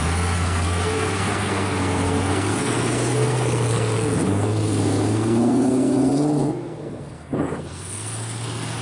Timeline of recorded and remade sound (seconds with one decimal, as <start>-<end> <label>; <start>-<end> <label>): 0.0-8.8 remade